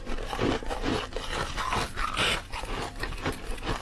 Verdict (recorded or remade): recorded